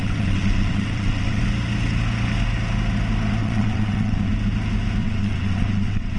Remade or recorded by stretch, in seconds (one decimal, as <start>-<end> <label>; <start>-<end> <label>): 0.0-1.4 remade; 1.4-3.4 recorded; 3.4-4.3 remade; 4.3-5.0 recorded; 5.0-6.2 remade